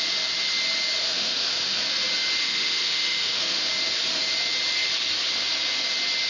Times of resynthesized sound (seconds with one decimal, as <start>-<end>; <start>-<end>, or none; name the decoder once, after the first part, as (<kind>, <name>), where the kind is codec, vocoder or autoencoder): 1.0-1.8 (autoencoder, DAC-VAE); 2.4-3.7

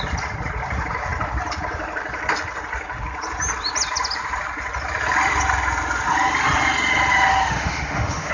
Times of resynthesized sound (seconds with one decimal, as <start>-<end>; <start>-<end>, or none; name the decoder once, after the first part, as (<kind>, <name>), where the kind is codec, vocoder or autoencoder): 7.3-8.3 (autoencoder, DAC-VAE)

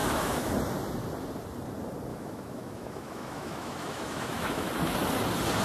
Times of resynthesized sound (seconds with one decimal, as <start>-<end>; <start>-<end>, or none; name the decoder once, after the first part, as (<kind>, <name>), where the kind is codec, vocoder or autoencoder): 0.0-0.5 (autoencoder, DAC-VAE); 2.1-4.7

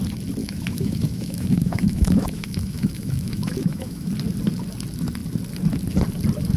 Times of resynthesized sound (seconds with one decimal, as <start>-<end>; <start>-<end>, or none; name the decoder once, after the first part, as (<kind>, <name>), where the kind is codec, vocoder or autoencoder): 0.4-4.1 (autoencoder, DAC-VAE)

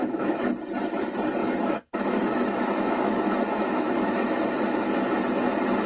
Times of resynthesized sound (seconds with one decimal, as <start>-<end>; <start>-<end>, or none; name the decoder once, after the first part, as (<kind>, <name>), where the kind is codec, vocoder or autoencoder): 0.0-0.5 (autoencoder, DAC-VAE); 1.4-4.9

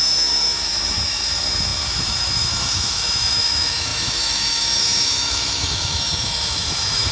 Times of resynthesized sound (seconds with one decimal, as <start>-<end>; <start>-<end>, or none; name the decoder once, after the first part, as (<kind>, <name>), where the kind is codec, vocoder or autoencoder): 0.0-7.1 (autoencoder, DAC-VAE)

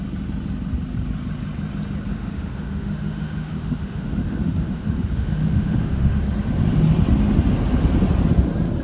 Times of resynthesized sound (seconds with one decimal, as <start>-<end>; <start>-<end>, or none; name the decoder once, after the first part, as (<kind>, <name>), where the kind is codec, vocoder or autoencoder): 2.1-6.2 (autoencoder, DAC-VAE)